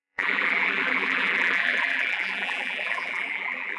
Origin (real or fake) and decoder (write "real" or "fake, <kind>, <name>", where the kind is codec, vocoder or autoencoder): fake, vocoder, BigVGAN v2